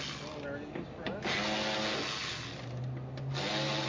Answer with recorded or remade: recorded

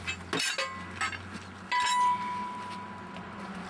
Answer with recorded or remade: recorded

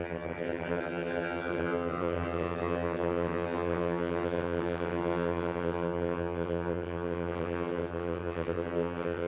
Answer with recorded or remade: remade